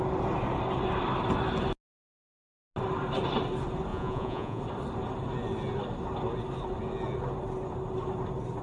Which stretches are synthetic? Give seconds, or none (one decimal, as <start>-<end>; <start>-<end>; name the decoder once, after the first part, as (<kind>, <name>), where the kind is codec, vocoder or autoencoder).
3.9-4.6 (vocoder, Vocos)